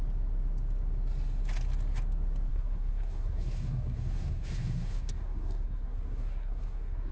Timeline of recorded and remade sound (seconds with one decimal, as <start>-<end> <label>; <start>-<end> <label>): 0.0-2.5 recorded; 2.5-7.1 remade